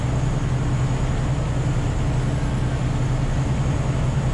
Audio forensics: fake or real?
real